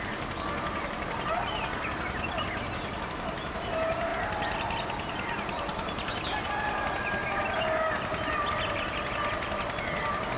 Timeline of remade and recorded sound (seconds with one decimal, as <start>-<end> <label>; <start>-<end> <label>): 0.0-10.4 recorded